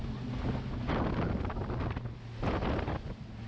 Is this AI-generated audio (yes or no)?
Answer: no